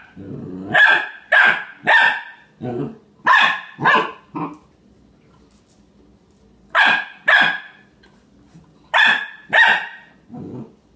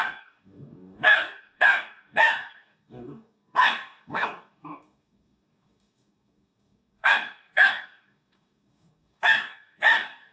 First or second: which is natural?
first